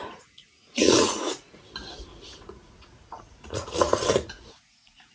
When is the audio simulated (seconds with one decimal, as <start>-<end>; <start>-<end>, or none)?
0.0-1.6; 2.1-5.1